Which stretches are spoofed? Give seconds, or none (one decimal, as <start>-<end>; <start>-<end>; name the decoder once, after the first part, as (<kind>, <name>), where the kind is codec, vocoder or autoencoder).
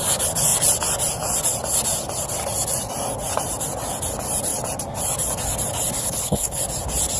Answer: 6.0-6.6 (codec, HILCodec)